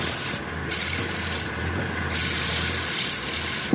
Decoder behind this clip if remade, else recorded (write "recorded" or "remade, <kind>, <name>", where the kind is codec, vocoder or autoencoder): recorded